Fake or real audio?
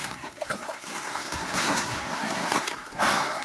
fake